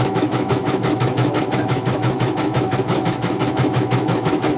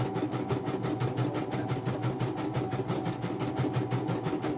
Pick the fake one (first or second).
first